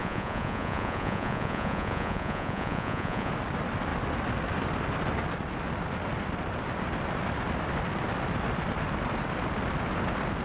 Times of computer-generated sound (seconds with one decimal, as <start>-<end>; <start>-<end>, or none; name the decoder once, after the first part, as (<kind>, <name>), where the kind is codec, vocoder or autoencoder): 0.0-3.3 (vocoder, Vocos)